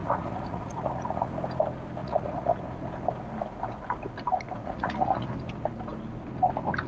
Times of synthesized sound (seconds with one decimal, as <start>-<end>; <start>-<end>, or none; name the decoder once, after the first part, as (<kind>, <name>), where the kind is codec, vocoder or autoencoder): 0.0-1.3 (vocoder, Vocos); 2.0-2.6; 4.6-5.3